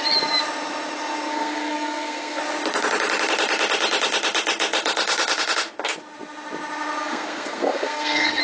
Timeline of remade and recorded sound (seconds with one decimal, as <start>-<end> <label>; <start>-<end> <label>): 0.0-1.3 recorded; 1.3-2.4 remade; 2.4-7.0 recorded; 7.0-8.4 remade